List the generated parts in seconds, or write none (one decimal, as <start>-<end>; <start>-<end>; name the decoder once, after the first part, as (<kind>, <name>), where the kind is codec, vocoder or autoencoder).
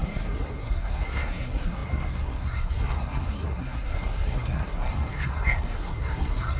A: 0.0-6.6 (codec, SNAC)